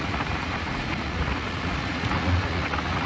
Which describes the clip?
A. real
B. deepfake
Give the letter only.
B